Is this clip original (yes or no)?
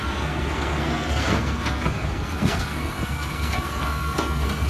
no